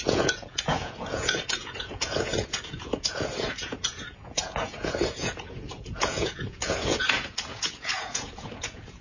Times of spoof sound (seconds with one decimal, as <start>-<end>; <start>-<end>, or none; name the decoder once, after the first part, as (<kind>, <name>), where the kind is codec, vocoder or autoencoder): 0.0-9.0 (vocoder, Vocos)